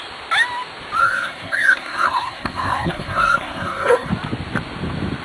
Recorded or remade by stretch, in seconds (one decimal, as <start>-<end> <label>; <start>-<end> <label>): 0.0-1.0 recorded; 1.0-4.1 remade; 4.1-5.2 recorded